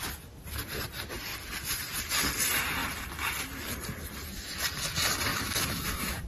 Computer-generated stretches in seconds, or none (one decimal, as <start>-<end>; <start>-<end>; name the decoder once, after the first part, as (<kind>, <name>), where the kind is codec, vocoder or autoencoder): 5.3-6.3 (autoencoder, DAC-VAE)